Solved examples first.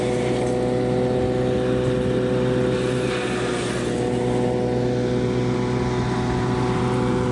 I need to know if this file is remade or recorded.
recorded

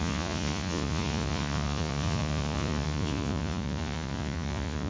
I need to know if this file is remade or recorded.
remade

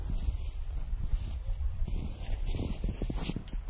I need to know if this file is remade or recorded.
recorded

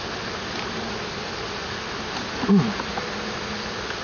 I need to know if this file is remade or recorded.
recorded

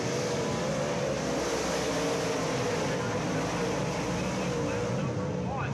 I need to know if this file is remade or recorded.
recorded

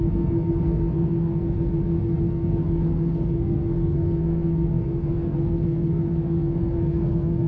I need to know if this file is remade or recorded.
remade